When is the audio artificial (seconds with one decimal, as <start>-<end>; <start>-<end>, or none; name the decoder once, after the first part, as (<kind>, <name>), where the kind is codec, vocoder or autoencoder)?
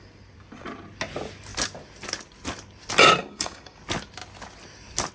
3.2-3.8 (codec, DAC)